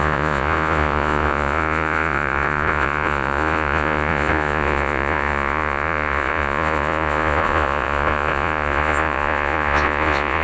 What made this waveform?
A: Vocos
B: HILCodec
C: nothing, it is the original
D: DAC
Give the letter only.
A